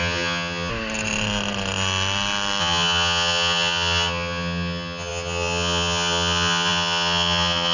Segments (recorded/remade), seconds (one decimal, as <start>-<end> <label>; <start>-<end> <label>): 0.0-0.7 remade; 0.7-2.6 recorded; 2.6-7.7 remade